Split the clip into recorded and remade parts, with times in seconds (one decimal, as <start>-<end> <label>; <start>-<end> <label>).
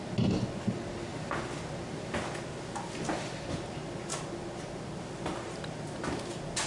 0.0-6.7 recorded